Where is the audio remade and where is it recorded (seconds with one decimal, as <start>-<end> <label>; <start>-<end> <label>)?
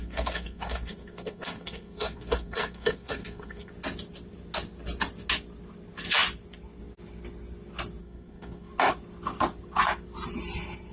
0.0-3.7 remade; 3.7-8.0 recorded; 8.0-8.7 remade; 8.7-10.9 recorded